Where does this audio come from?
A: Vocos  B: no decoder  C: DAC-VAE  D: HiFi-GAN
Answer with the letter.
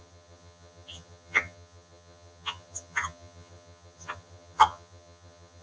D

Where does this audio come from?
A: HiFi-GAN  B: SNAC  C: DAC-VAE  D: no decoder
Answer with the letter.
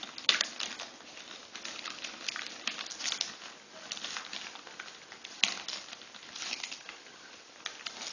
D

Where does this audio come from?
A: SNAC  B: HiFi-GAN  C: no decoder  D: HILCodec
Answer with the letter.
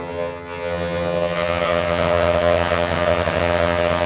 B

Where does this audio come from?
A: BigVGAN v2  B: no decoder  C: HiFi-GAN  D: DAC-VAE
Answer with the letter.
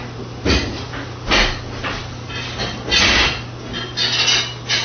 B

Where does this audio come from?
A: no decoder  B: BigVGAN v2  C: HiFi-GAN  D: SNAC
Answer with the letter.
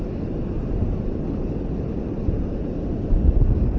A